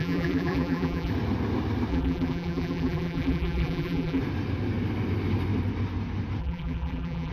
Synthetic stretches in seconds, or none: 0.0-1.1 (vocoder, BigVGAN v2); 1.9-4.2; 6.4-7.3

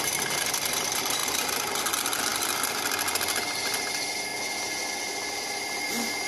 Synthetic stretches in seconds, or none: none

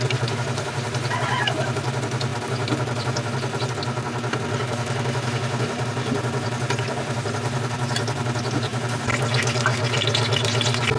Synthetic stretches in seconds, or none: 8.7-9.3 (vocoder, BigVGAN v2)

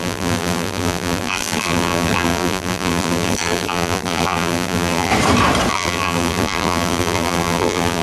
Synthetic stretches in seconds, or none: 0.0-5.1 (vocoder, BigVGAN v2); 5.7-8.0

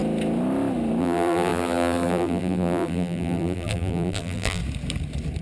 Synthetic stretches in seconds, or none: 1.0-4.6 (vocoder, BigVGAN v2)

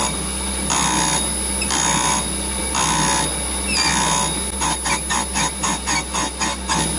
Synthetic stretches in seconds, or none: none